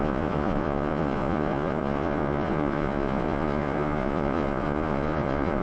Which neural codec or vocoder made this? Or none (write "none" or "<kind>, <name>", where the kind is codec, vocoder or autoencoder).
vocoder, Vocos